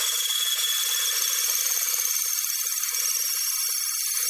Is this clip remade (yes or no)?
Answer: no